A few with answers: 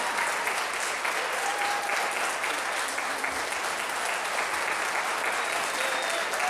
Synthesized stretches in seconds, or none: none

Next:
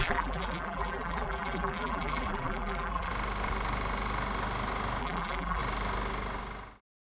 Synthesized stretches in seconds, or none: 0.0-3.1 (vocoder, BigVGAN v2); 5.0-5.6

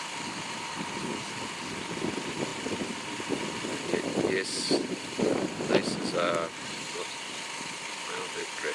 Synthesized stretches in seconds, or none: none

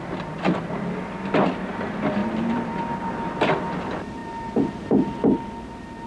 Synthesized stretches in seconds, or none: 2.2-2.8 (vocoder, BigVGAN v2)

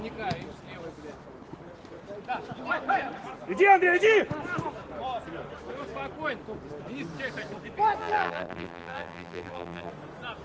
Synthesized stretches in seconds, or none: 8.0-9.9 (vocoder, BigVGAN v2)

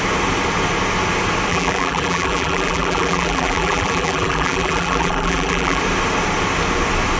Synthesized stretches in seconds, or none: 1.5-5.8 (vocoder, BigVGAN v2)

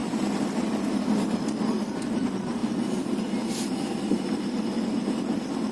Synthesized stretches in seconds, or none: 0.0-0.9 (vocoder, BigVGAN v2)